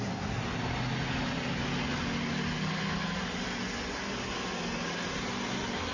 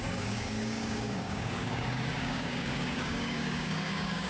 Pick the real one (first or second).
first